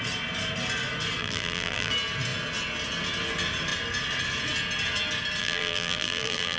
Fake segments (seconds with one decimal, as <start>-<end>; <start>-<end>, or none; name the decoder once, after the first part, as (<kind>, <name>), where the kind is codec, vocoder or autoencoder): 1.2-1.9 (vocoder, BigVGAN v2); 5.4-6.6